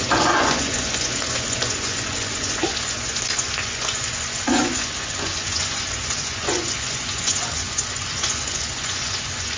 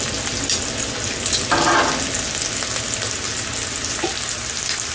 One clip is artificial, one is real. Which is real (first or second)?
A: second